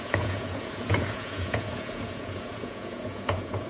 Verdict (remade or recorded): remade